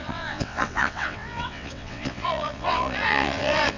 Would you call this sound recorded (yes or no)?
no